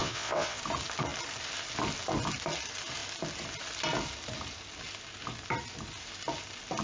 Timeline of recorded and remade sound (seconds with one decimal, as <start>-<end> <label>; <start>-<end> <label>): 0.0-0.6 remade; 0.6-6.8 recorded